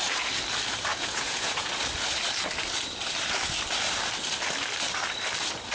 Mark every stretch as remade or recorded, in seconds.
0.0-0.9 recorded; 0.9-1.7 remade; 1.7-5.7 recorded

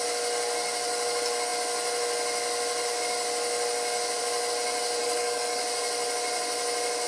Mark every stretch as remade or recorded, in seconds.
0.0-5.0 recorded; 5.0-5.6 remade; 5.6-7.1 recorded

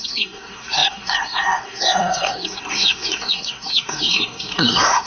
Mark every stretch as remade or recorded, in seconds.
0.0-5.1 remade

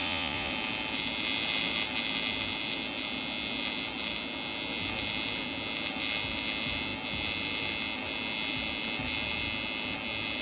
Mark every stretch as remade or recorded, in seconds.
0.0-0.5 remade; 0.5-10.4 recorded

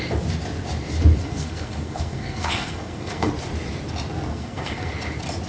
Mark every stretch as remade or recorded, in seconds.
0.0-1.2 recorded; 1.2-3.3 remade; 3.3-4.3 recorded; 4.3-4.9 remade; 4.9-5.5 recorded

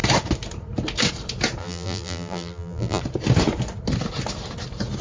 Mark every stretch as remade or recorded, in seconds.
0.0-1.6 recorded; 1.6-3.0 remade; 3.0-5.0 recorded

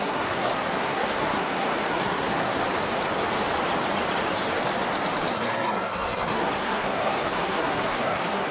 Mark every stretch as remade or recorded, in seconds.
0.0-2.6 remade; 2.6-5.3 recorded; 5.3-8.5 remade

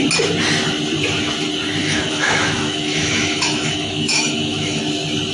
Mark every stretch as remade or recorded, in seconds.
0.0-1.8 recorded; 1.8-4.8 remade; 4.8-5.3 recorded